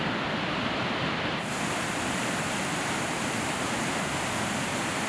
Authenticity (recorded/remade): recorded